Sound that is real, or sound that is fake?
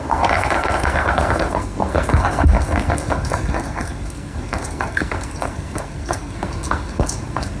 fake